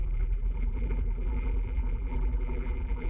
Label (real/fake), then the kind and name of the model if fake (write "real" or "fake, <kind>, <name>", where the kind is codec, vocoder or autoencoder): fake, vocoder, BigVGAN v2